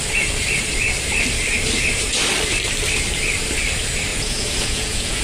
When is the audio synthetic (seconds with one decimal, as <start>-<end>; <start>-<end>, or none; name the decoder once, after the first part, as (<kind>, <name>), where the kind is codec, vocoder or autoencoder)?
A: 4.1-5.2 (vocoder, Vocos)